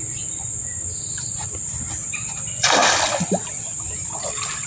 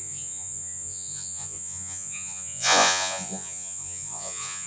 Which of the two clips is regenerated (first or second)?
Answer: second